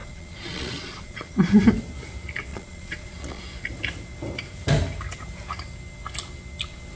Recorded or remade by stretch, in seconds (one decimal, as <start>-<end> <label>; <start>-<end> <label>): 0.0-1.3 remade; 1.3-2.5 recorded; 2.5-3.4 remade; 3.4-7.0 recorded

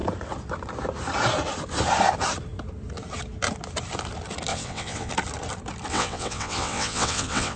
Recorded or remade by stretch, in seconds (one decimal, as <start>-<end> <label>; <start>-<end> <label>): 0.0-4.5 recorded; 4.5-5.1 remade; 5.1-5.9 recorded; 5.9-7.6 remade

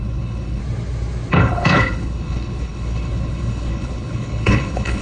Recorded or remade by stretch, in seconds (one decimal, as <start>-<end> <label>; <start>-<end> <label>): 0.0-0.6 remade; 0.6-1.3 recorded; 1.3-5.0 remade

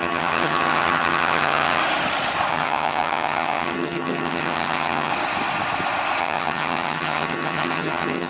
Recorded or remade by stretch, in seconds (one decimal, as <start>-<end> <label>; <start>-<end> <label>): 0.0-1.8 remade; 1.8-2.5 recorded; 2.5-5.1 remade; 5.1-6.2 recorded; 6.2-8.3 remade

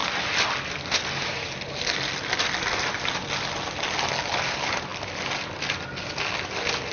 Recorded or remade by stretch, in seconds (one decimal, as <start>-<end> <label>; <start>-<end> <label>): 0.0-6.9 recorded

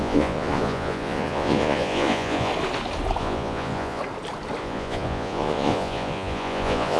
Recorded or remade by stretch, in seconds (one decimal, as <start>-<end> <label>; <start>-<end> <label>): 0.0-2.5 remade; 2.5-3.2 recorded; 3.2-4.0 remade; 4.0-4.6 recorded; 4.6-7.0 remade

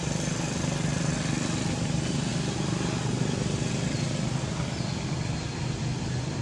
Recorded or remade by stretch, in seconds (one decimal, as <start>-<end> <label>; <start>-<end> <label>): 0.0-6.4 recorded